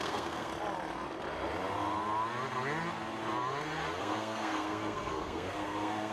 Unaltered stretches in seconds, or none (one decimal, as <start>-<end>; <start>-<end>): 0.5-4.0